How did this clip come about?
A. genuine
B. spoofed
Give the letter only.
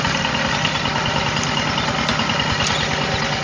A